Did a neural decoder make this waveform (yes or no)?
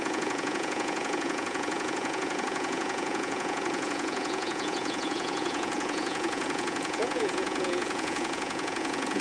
yes